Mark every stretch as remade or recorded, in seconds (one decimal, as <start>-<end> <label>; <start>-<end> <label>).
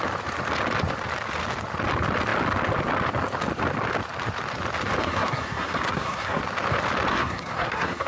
0.0-5.0 recorded; 5.0-6.4 remade; 6.4-7.1 recorded; 7.1-8.1 remade